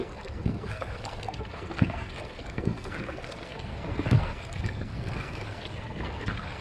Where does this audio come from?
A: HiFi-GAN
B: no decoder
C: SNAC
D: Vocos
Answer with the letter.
C